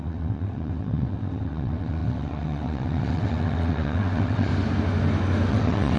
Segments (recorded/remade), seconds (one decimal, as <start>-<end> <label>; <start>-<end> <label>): 0.0-4.5 remade; 4.5-5.5 recorded; 5.5-6.0 remade